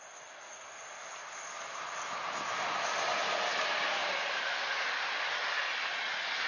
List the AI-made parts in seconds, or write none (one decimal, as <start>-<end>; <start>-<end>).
4.0-4.5